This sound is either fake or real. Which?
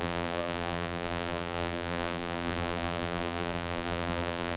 fake